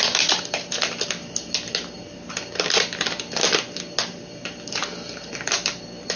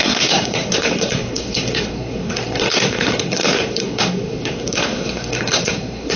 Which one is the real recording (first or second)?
first